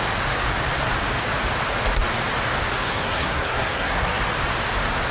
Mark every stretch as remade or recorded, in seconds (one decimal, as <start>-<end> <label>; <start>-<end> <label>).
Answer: 0.0-2.8 recorded; 2.8-4.2 remade; 4.2-5.1 recorded

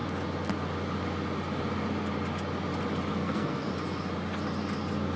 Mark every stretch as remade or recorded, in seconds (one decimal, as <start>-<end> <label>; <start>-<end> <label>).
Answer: 0.0-3.1 recorded; 3.1-3.7 remade; 3.7-5.2 recorded

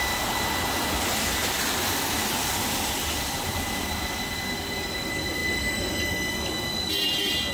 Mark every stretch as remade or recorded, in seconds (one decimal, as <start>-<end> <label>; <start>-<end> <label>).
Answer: 0.0-7.5 recorded

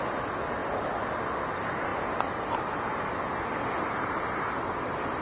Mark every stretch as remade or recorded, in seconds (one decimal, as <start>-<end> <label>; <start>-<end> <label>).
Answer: 0.0-5.2 recorded

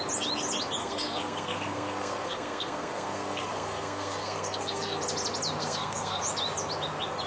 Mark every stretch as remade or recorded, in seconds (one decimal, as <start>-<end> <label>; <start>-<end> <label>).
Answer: 0.0-0.8 recorded; 0.8-5.0 remade; 5.0-5.6 recorded; 5.6-6.2 remade; 6.2-7.3 recorded

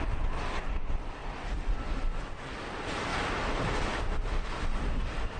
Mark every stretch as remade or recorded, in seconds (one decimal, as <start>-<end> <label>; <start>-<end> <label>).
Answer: 0.0-5.4 recorded

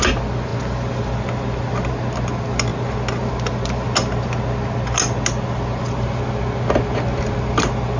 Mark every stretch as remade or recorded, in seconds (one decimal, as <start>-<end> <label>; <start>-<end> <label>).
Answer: 0.0-8.0 recorded

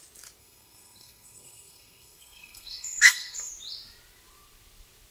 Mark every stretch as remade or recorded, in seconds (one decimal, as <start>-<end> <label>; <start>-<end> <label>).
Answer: 0.0-0.4 recorded; 0.4-3.5 remade; 3.5-5.1 recorded